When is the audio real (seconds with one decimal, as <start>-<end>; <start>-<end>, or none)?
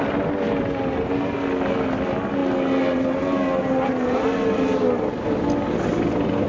0.0-6.5